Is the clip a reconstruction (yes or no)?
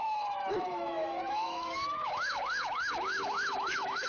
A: yes